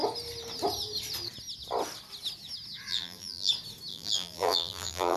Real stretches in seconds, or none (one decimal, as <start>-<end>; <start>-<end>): 0.0-2.9; 3.5-3.9